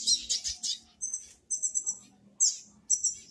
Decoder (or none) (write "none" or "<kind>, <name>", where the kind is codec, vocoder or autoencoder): none